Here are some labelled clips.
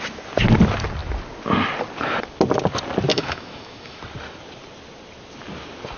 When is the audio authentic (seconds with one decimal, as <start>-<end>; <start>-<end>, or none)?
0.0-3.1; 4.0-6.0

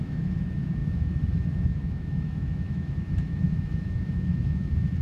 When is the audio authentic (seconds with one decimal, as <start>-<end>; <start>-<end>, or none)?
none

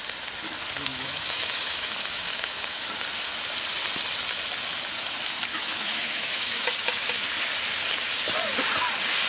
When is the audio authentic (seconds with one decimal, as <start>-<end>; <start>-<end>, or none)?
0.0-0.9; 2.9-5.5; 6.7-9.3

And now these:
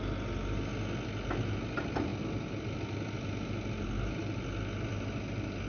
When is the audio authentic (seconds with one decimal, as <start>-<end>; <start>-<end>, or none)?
0.0-5.7